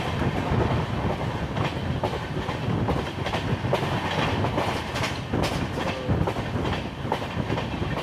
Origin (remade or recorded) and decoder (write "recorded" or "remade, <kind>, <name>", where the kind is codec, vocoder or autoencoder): recorded